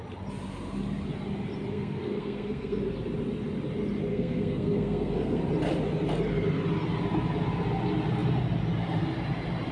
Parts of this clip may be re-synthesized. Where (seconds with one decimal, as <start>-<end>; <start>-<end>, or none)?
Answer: 1.7-2.8; 4.1-5.4